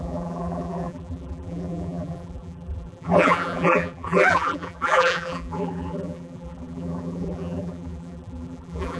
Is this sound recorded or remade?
remade